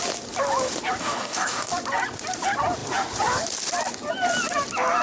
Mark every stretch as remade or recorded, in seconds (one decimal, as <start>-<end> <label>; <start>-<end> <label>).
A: 0.0-1.0 recorded; 1.0-1.7 remade; 1.7-5.0 recorded